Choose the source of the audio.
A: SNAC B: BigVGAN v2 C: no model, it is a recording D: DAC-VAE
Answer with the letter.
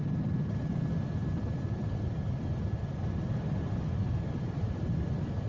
C